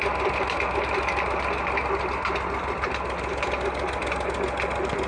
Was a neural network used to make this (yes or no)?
no